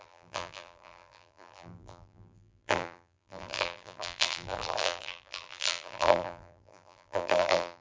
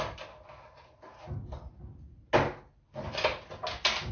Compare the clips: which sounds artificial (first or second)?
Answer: first